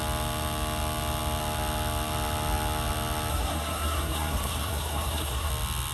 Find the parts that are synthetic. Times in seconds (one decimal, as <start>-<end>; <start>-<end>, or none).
3.3-5.5